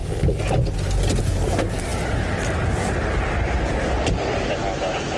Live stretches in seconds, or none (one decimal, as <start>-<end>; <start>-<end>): 0.0-5.2